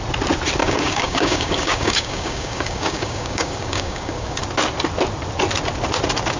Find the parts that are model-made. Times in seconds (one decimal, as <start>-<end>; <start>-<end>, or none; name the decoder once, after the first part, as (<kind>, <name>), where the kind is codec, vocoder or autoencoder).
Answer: 0.6-4.4 (codec, DAC)